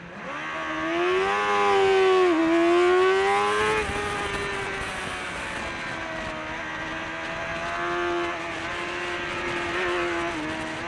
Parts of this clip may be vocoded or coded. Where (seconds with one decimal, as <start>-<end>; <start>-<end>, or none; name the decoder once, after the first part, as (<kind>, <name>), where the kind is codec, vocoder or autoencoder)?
none